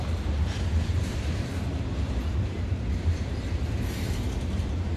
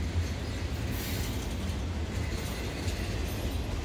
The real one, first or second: second